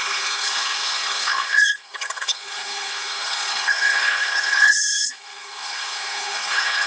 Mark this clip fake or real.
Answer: fake